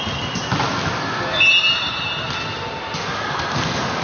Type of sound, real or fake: real